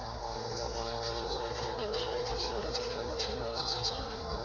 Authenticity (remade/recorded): remade